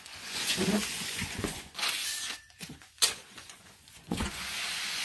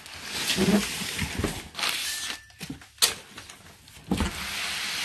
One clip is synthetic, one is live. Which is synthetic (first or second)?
first